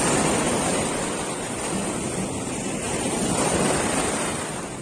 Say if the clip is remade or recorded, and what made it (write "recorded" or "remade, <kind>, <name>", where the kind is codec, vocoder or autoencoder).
recorded